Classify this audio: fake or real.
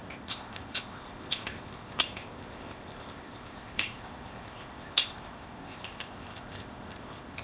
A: fake